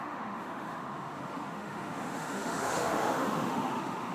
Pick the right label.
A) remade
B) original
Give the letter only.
A